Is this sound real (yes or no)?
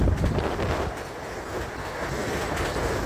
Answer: yes